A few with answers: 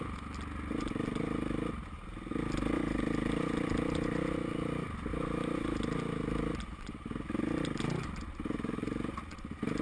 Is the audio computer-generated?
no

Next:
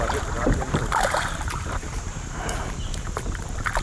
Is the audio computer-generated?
yes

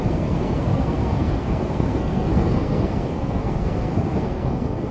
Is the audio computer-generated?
yes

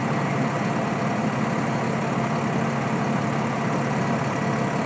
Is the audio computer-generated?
no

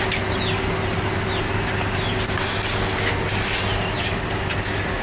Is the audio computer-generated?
no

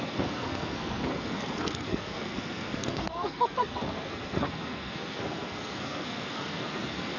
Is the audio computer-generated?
yes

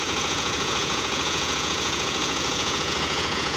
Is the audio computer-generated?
yes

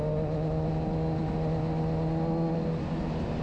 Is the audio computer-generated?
no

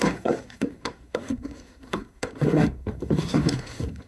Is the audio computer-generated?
yes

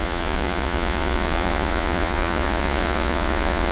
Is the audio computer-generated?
yes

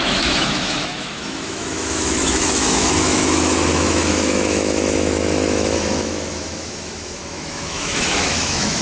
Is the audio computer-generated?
yes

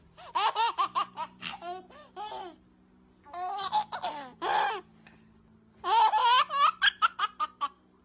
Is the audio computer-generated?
no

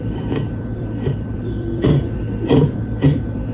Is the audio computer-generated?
yes